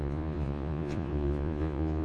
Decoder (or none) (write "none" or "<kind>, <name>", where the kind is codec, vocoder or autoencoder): vocoder, Vocos